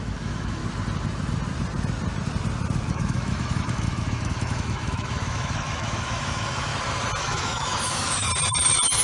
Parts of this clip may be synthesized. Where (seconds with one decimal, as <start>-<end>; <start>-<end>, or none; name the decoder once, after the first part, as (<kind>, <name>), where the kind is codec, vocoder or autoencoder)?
0.0-0.6 (autoencoder, DAC-VAE); 2.9-6.7; 7.2-8.3